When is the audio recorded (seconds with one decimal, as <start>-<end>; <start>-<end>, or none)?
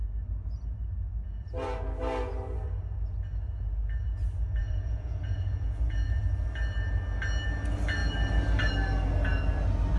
0.0-4.6; 6.2-10.0